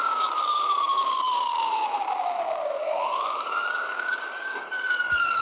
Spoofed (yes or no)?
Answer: yes